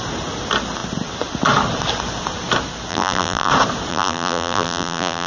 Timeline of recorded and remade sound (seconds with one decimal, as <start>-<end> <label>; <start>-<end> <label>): 0.0-2.9 recorded; 2.9-3.5 remade; 3.5-3.9 recorded; 3.9-5.3 remade